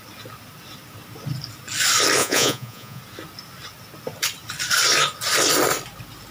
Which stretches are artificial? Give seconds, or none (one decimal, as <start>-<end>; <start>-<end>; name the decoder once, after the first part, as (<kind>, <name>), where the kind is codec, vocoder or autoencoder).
2.2-3.0 (vocoder, Vocos)

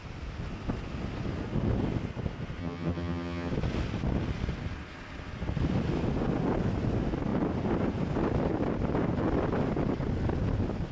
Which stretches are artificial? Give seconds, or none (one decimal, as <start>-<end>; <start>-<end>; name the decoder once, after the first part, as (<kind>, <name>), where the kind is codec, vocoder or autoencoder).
2.6-3.5 (vocoder, HiFi-GAN)

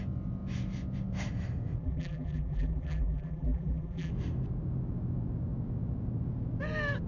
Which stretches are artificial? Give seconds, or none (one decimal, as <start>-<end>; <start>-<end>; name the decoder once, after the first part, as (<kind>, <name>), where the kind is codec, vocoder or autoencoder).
1.8-4.1 (vocoder, BigVGAN v2)

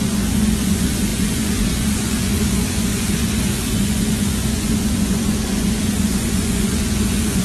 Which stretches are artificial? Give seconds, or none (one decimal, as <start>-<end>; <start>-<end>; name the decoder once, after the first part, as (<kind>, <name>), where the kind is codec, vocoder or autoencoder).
0.0-7.4 (vocoder, Vocos)

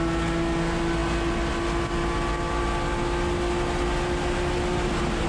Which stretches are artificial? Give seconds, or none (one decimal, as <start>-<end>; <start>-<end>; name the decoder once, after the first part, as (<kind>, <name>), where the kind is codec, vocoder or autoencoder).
none

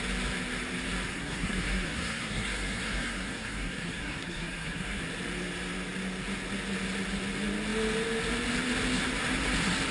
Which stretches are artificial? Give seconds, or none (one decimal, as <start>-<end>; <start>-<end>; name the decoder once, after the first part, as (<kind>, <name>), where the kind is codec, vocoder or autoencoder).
1.1-5.0 (codec, SNAC)